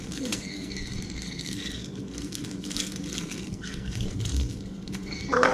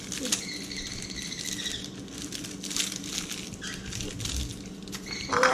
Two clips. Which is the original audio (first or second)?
second